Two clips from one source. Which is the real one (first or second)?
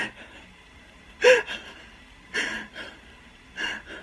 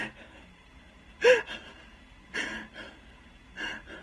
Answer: second